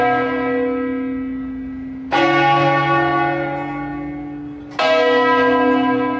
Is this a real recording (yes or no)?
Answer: yes